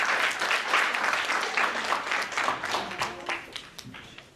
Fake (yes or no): no